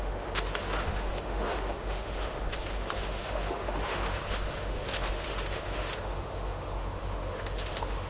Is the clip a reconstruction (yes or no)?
yes